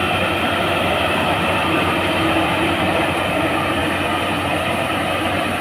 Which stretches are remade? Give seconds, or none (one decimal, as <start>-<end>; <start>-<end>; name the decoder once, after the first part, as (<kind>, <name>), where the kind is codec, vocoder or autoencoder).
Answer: 0.0-2.3 (vocoder, BigVGAN v2)